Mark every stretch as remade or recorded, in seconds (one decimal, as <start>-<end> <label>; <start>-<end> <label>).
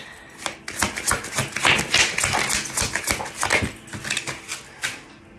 0.0-5.4 recorded